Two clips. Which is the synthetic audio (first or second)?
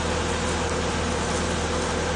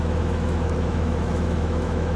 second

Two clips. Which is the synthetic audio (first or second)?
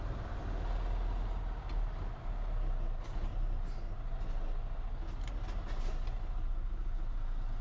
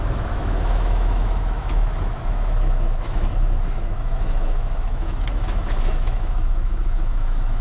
second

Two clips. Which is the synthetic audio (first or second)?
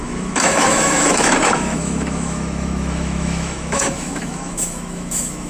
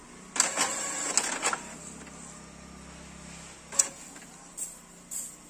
first